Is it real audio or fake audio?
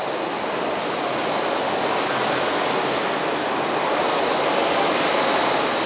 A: real